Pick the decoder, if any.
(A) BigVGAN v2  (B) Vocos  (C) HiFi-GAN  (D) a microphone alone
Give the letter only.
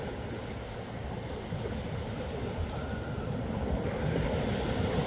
D